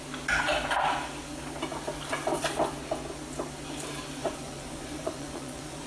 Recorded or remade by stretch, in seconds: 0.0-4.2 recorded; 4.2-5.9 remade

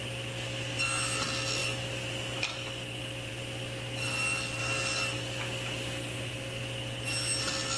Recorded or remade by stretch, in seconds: 0.0-7.8 recorded